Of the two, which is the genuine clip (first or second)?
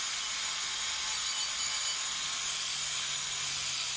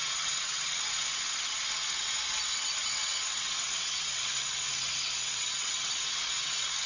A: first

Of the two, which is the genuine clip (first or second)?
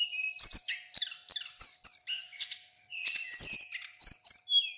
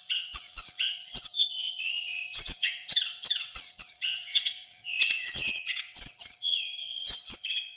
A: first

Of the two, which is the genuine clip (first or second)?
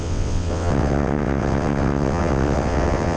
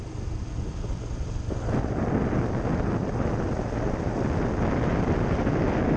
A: second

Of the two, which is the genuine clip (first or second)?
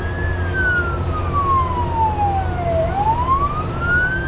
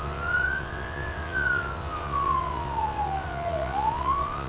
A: first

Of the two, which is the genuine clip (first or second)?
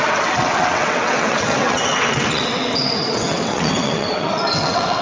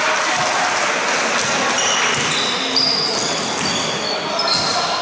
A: second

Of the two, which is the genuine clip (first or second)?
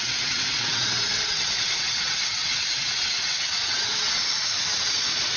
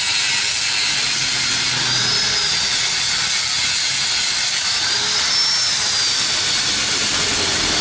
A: second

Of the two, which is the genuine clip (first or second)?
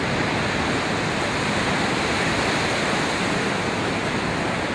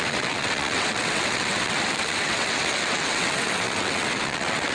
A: first